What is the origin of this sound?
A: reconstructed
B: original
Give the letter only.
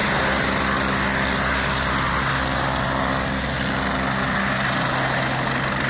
B